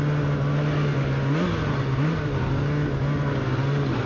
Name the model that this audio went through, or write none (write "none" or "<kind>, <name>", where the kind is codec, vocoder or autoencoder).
none